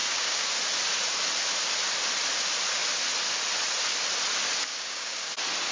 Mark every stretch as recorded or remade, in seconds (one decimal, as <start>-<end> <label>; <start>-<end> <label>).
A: 0.0-0.5 remade; 0.5-4.7 recorded; 4.7-5.3 remade; 5.3-5.7 recorded